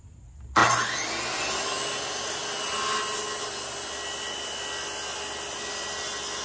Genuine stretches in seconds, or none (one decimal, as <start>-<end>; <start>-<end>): 0.0-6.4